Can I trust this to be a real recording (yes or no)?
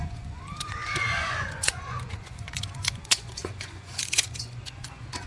no